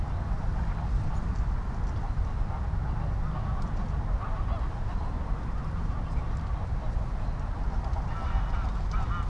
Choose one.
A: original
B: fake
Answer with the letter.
A